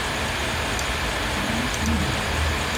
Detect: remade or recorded recorded